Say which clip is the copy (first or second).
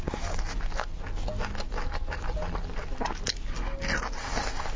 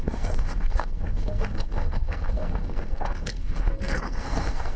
second